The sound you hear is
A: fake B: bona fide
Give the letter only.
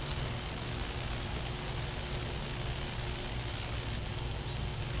B